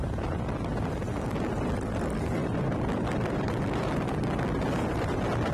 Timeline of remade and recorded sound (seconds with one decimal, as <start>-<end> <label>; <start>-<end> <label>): 0.0-1.0 recorded; 1.0-1.5 remade; 1.5-2.4 recorded; 2.4-3.9 remade; 3.9-5.5 recorded